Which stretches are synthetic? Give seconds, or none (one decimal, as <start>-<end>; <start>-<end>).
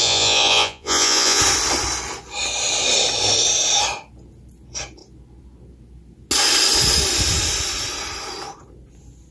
0.0-1.4